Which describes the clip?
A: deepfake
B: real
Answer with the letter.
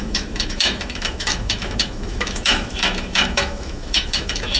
A